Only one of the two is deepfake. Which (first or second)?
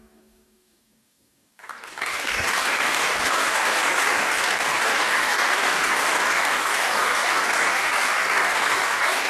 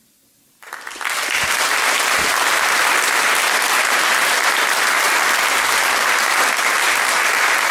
first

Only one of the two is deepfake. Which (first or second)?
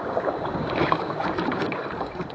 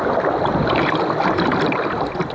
first